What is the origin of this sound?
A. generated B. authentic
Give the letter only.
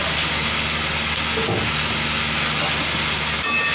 B